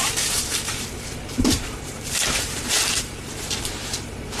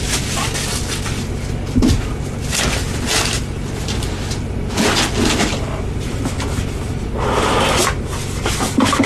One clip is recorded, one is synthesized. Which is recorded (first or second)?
second